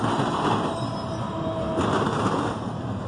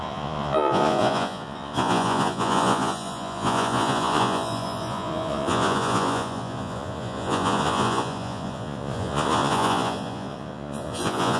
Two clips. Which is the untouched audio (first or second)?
first